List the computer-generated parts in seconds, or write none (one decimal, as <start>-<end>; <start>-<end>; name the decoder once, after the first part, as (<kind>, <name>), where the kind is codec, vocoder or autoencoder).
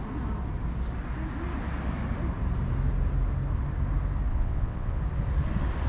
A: 4.3-5.0 (vocoder, WaveNeXt)